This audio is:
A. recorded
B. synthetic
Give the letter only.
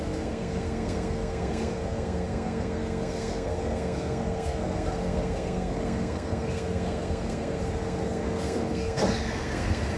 B